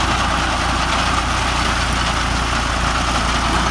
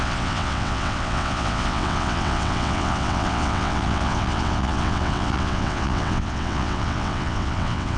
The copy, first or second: second